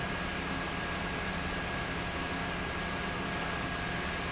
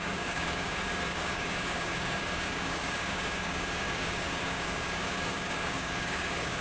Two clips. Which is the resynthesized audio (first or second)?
second